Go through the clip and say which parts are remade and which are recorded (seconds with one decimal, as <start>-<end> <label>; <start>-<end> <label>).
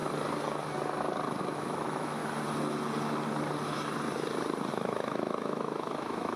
0.0-1.4 recorded; 1.4-2.2 remade; 2.2-4.7 recorded; 4.7-6.4 remade